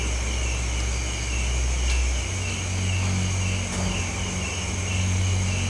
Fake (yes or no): no